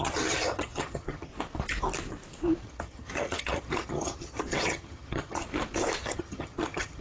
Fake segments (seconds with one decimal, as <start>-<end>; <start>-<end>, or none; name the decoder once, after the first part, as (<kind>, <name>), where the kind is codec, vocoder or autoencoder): 0.0-1.3 (vocoder, HiFi-GAN); 2.6-5.4; 6.0-7.0